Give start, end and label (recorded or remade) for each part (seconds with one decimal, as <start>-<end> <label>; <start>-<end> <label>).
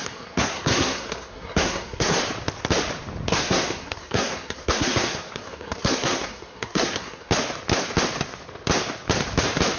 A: 0.0-2.2 remade; 2.2-3.3 recorded; 3.3-7.3 remade; 7.3-9.8 recorded